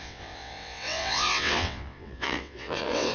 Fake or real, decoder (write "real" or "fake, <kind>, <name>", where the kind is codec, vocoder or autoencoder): fake, vocoder, WaveNeXt